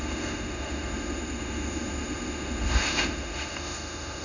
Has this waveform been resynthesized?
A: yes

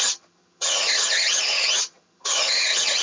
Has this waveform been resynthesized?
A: yes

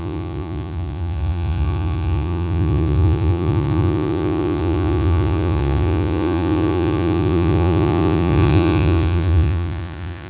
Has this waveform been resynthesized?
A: yes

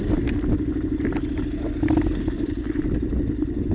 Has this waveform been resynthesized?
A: no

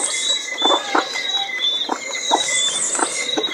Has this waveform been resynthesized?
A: yes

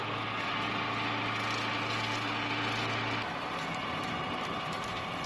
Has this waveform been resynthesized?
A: no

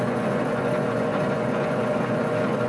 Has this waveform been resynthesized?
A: yes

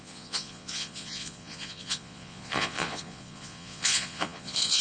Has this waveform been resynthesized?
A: yes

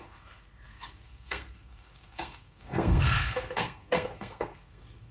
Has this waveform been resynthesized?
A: yes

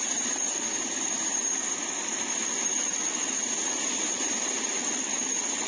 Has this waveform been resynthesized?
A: no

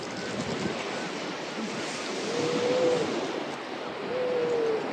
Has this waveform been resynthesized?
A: no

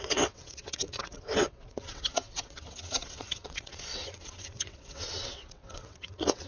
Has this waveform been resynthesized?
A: yes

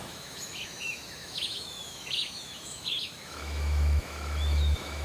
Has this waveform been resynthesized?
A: yes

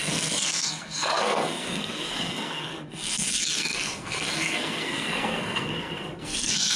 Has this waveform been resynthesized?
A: yes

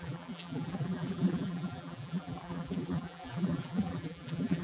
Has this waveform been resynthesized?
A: yes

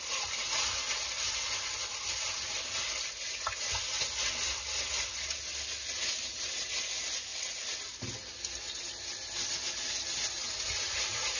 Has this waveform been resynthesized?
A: no